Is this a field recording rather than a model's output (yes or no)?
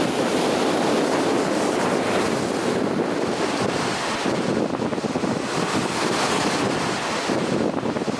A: yes